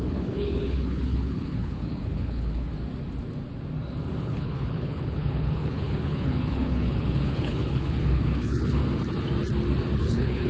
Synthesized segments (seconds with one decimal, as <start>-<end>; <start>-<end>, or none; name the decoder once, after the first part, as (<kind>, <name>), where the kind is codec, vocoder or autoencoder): 0.0-2.7 (codec, HILCodec); 4.2-8.8; 10.0-10.5

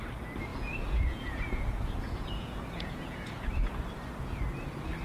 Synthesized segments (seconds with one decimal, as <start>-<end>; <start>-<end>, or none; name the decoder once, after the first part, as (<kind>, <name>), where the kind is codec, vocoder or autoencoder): 0.5-3.5 (vocoder, Vocos)